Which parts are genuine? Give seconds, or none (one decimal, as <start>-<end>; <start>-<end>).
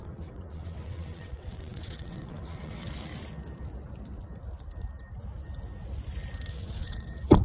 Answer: 3.1-6.5